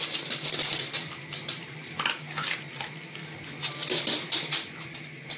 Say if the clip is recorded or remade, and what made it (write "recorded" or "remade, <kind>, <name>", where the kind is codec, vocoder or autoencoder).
recorded